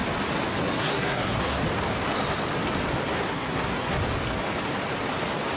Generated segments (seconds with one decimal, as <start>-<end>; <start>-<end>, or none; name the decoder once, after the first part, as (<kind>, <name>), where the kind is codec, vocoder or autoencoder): 0.8-1.6 (codec, SNAC); 3.1-4.0